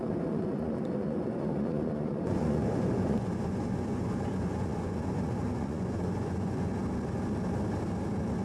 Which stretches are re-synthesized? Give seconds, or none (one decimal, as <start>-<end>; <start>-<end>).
0.0-6.7